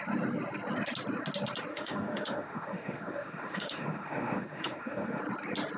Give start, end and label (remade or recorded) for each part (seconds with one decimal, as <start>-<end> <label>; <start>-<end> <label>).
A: 0.0-1.7 recorded; 1.7-5.2 remade; 5.2-5.8 recorded